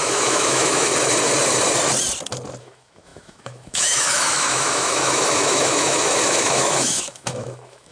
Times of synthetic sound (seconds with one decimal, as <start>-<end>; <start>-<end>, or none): 0.0-0.9; 2.6-7.9